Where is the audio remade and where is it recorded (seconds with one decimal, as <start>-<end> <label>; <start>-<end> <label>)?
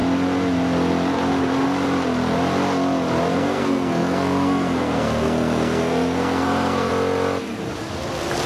0.0-3.3 recorded; 3.3-6.9 remade; 6.9-8.5 recorded